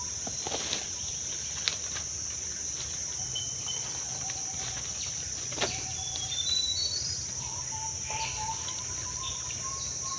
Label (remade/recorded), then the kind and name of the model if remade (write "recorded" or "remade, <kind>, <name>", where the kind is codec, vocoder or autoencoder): remade, vocoder, BigVGAN v2